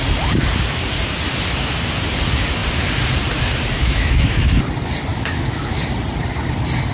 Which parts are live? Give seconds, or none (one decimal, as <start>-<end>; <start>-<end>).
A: 0.0-3.8; 4.4-5.1; 5.8-6.9

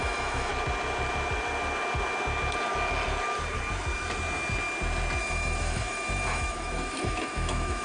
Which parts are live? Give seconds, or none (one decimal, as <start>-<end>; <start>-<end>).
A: 0.5-5.2

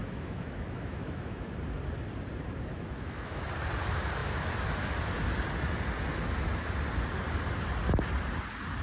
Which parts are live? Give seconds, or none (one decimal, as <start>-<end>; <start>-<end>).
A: 1.5-2.7; 3.5-8.8

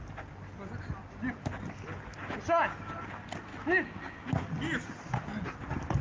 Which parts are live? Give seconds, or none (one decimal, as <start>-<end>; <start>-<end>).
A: 0.0-3.5; 4.5-6.0

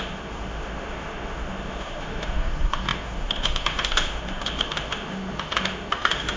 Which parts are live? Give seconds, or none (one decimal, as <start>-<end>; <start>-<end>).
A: none